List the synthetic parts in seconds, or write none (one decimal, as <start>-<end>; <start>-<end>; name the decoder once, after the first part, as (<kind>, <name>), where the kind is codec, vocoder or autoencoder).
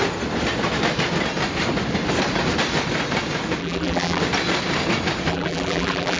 3.6-4.2 (vocoder, BigVGAN v2); 5.3-6.2